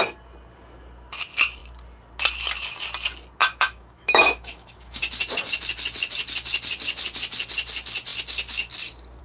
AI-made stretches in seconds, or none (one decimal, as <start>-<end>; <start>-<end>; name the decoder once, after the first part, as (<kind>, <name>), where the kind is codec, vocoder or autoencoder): 3.4-5.0 (autoencoder, DAC-VAE)